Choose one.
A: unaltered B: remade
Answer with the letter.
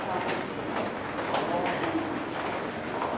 A